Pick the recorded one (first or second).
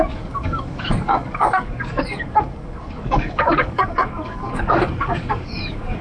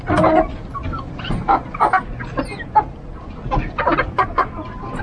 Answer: second